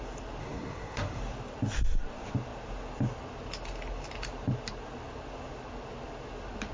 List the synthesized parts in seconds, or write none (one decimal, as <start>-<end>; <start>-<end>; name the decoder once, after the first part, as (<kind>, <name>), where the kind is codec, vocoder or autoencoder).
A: 0.4-1.2 (codec, SNAC)